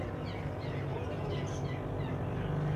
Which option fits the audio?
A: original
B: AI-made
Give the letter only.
A